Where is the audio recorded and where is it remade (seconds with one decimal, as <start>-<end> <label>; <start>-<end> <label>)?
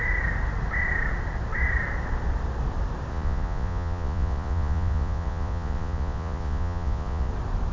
0.0-3.1 recorded; 3.1-7.3 remade; 7.3-7.7 recorded